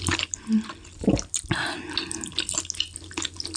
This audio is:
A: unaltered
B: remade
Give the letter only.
A